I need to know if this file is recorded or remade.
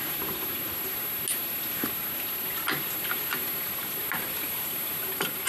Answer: recorded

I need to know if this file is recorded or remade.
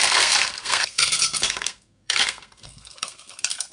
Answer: remade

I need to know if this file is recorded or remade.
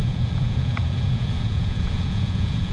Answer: remade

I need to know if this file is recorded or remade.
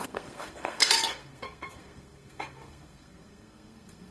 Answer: remade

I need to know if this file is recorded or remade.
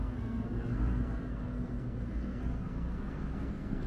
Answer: remade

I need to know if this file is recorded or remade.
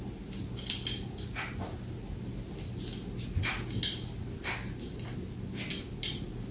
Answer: recorded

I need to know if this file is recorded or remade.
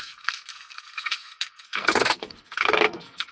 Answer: remade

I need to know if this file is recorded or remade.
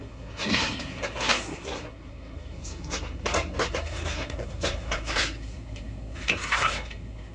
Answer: remade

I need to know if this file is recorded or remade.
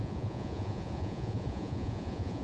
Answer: remade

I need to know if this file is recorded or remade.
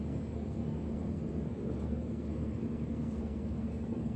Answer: remade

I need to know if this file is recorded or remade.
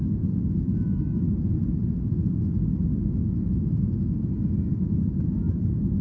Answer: recorded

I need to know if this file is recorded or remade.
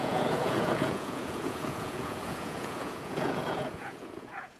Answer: remade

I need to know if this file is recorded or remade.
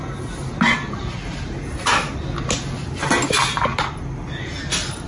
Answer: recorded